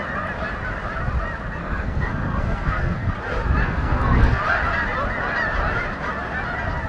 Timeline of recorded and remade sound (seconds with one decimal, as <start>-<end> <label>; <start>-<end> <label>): 0.0-1.6 recorded; 1.6-3.1 remade; 3.1-3.6 recorded; 3.6-4.4 remade; 4.4-6.9 recorded